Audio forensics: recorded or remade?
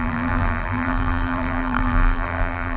remade